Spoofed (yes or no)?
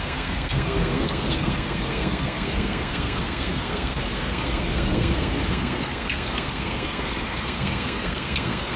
yes